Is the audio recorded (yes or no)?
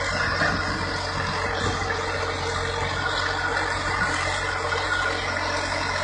yes